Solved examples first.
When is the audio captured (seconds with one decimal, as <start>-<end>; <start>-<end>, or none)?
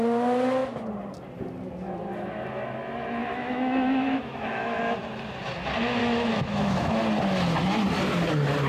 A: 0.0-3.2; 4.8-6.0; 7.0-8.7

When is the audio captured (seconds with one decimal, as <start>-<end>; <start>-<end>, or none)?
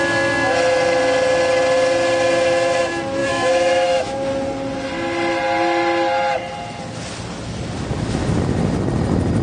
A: 0.0-3.2; 4.1-9.4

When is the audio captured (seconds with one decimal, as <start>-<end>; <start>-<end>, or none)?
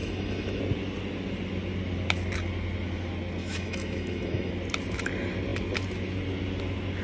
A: 0.6-3.4; 4.5-7.0